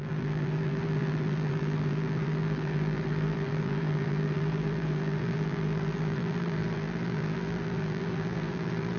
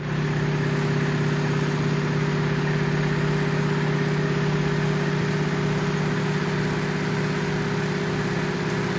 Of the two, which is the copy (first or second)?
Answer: first